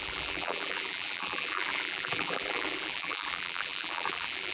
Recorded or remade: remade